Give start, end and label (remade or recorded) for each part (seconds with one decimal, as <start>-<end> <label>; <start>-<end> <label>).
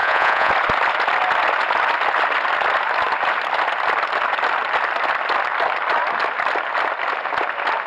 0.0-0.5 remade; 0.5-7.9 recorded